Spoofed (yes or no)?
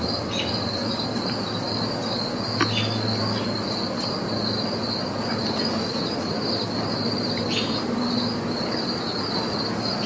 no